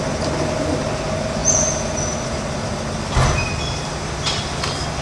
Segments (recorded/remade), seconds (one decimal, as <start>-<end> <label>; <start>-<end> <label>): 0.0-5.0 recorded